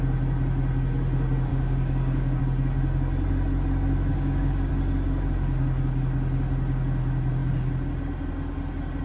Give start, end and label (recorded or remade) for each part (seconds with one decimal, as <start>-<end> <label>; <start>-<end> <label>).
0.0-1.5 recorded; 1.5-2.4 remade; 2.4-4.1 recorded; 4.1-4.7 remade; 4.7-9.0 recorded